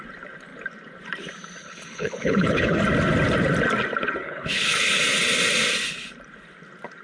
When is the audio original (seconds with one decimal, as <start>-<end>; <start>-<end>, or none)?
0.0-1.6; 2.8-4.2; 4.9-7.0